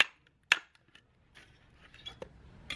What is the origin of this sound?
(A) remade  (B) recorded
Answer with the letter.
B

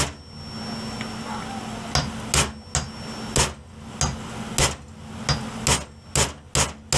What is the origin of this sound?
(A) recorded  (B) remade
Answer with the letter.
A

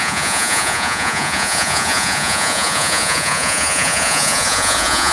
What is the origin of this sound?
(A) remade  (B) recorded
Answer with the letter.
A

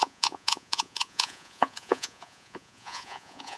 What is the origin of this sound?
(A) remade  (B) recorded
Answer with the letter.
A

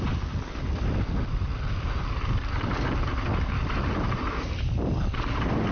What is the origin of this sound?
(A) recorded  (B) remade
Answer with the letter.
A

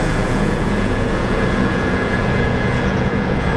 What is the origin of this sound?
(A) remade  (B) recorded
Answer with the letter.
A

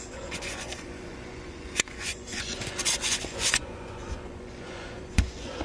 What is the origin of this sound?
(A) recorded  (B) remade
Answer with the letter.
B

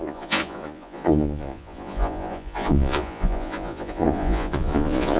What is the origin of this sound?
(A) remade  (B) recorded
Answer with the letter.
A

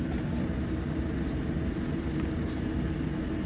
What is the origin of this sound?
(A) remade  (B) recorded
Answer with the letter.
B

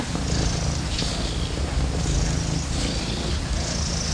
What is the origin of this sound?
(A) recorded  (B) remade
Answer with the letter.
A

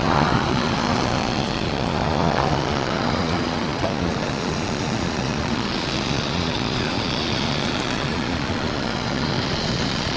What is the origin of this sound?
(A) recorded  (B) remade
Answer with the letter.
B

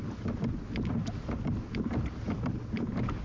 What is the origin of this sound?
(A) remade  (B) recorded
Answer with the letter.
B